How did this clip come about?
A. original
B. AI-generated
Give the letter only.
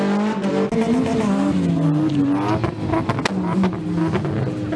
A